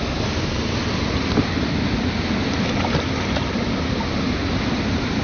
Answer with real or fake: real